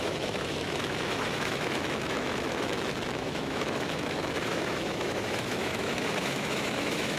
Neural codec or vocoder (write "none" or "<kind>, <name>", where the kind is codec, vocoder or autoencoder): autoencoder, DAC-VAE